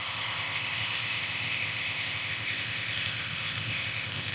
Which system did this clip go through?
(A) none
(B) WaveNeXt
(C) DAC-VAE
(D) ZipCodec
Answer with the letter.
D